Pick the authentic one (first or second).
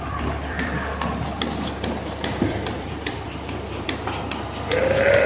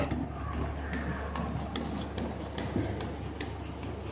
second